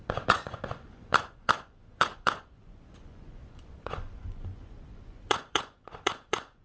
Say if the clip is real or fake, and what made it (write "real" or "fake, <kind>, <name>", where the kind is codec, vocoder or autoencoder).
fake, vocoder, Vocos